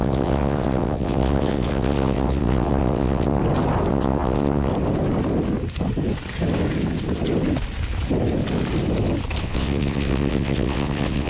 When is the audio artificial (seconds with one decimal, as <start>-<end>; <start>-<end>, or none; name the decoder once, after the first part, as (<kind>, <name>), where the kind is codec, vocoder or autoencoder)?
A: 0.0-3.4 (vocoder, WaveNeXt); 3.9-4.7; 9.4-11.3